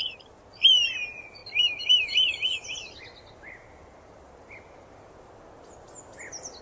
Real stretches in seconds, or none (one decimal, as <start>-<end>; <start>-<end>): 0.0-6.6